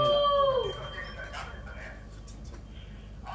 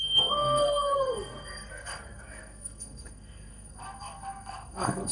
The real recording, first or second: first